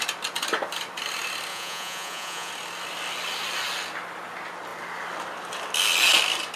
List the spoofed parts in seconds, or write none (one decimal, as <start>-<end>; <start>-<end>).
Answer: 1.5-2.5